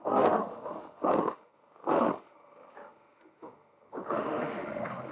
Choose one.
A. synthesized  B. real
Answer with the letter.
A